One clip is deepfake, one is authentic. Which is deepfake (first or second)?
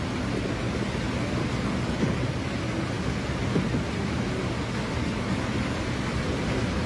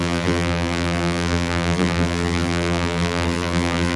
second